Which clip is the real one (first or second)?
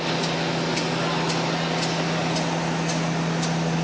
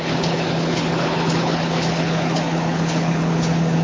first